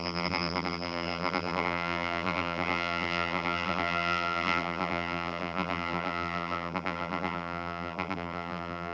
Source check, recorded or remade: remade